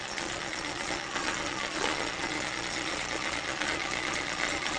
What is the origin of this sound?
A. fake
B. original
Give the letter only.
A